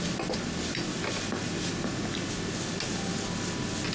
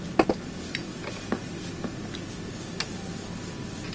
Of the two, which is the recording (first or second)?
first